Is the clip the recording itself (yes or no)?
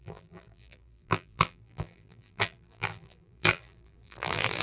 no